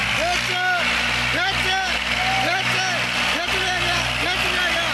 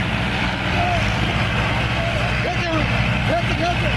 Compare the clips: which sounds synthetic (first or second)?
second